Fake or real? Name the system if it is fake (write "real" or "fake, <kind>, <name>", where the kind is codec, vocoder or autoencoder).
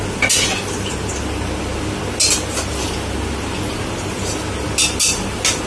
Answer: real